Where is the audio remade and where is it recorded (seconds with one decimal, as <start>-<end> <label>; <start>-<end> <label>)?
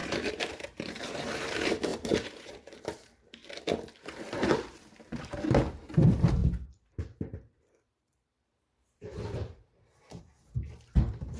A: 0.0-3.4 remade; 3.4-4.0 recorded; 4.0-11.4 remade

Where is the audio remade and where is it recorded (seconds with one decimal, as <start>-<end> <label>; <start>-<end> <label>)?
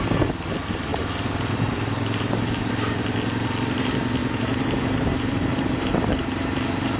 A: 0.0-0.9 recorded; 0.9-2.7 remade; 2.7-4.2 recorded; 4.2-7.0 remade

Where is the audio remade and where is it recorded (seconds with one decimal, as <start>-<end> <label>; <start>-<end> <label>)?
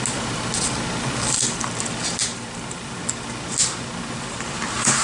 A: 0.0-2.2 recorded; 2.2-3.0 remade; 3.0-5.0 recorded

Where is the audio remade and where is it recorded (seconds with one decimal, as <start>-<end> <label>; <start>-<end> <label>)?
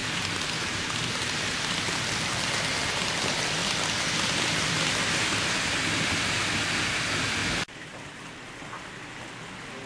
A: 0.0-2.0 remade; 2.0-7.4 recorded; 7.4-8.4 remade; 8.4-9.9 recorded